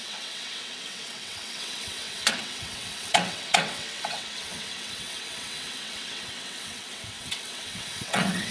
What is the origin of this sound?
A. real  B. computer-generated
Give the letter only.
B